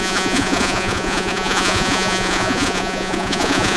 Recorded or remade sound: remade